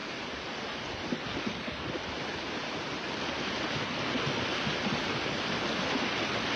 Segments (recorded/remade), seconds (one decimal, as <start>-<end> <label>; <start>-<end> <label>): 0.0-6.6 recorded